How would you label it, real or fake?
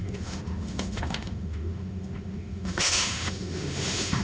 fake